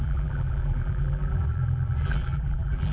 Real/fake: fake